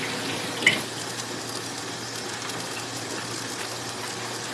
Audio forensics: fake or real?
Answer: real